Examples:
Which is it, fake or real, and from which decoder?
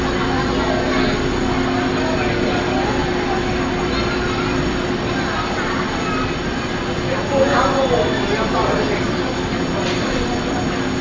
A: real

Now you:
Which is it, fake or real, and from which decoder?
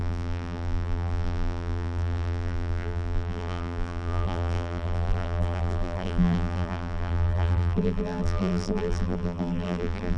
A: fake, vocoder, BigVGAN v2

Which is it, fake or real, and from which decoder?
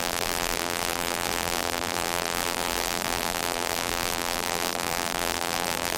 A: fake, vocoder, BigVGAN v2